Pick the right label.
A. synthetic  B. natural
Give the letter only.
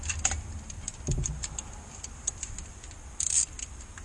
B